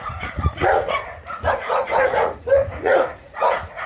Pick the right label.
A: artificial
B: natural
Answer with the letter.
A